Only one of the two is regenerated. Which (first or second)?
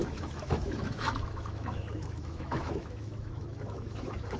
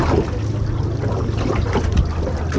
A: first